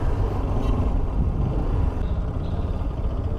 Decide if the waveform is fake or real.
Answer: real